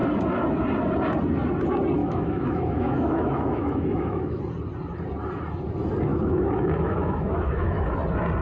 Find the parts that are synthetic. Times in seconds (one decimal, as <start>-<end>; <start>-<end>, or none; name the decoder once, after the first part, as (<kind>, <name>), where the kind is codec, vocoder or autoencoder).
2.0-4.4 (autoencoder, DAC-VAE); 6.1-7.9